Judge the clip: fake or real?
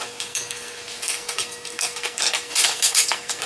fake